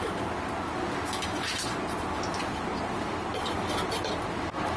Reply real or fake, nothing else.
fake